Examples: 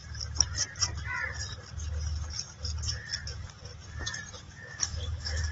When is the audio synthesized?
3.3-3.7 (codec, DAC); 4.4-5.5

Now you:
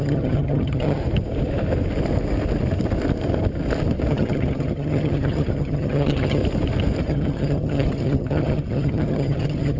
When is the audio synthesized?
0.0-1.0 (vocoder, HiFi-GAN); 4.1-6.4; 7.0-9.8

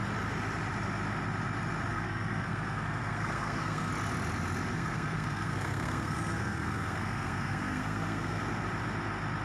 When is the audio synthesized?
1.9-3.9 (codec, SNAC); 4.7-8.4

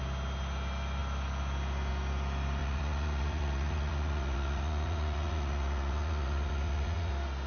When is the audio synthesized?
2.6-7.1 (vocoder, Vocos)

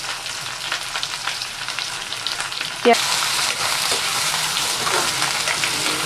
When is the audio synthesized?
1.2-4.9 (vocoder, BigVGAN v2)

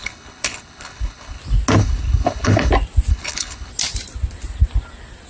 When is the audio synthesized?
0.0-1.4 (codec, HILCodec); 1.8-2.7; 3.1-3.7

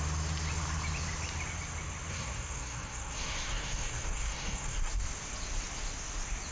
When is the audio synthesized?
2.1-4.9 (codec, SNAC)